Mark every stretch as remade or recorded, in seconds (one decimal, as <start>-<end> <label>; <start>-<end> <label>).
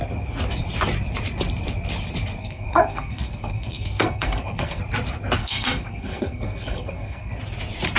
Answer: 0.0-2.4 recorded; 2.4-4.8 remade; 4.8-5.4 recorded; 5.4-7.3 remade; 7.3-8.0 recorded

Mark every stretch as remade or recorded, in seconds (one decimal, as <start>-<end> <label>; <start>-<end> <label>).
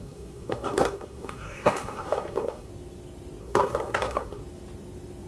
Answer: 0.0-2.7 remade; 2.7-3.4 recorded; 3.4-4.4 remade; 4.4-5.3 recorded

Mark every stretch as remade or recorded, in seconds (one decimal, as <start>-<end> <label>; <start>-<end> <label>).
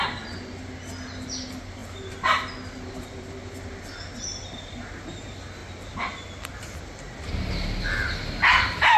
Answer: 0.0-9.0 recorded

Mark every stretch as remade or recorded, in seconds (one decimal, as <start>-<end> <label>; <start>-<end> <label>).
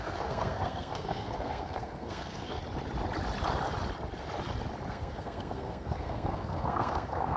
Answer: 0.0-2.6 remade; 2.6-4.9 recorded; 4.9-7.4 remade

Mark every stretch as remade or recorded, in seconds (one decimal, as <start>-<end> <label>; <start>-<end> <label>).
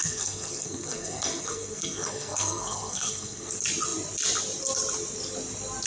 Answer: 0.0-3.5 remade; 3.5-5.9 recorded